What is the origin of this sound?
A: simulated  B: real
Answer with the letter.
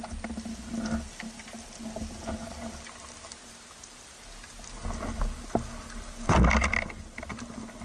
B